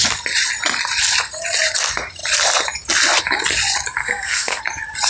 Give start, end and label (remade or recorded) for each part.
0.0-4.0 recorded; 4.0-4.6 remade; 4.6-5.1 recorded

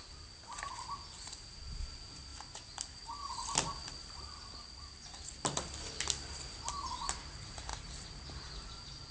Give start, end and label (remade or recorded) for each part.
0.0-9.1 recorded

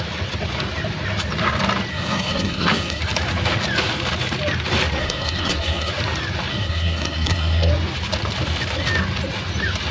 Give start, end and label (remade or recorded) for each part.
0.0-1.9 recorded; 1.9-3.0 remade; 3.0-5.0 recorded; 5.0-5.9 remade; 5.9-6.5 recorded; 6.5-7.7 remade; 7.7-9.9 recorded

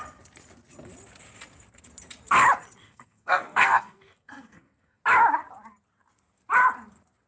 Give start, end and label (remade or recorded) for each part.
0.0-2.8 recorded; 2.8-5.0 remade; 5.0-7.3 recorded